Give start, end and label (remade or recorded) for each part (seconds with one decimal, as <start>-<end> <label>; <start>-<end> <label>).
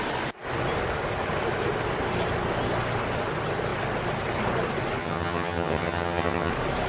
0.0-5.0 recorded; 5.0-6.5 remade; 6.5-6.9 recorded